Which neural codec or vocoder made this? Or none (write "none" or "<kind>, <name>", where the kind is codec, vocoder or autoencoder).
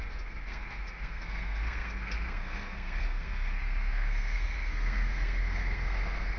codec, SNAC